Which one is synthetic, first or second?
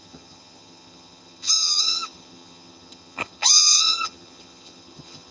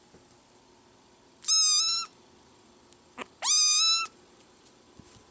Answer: first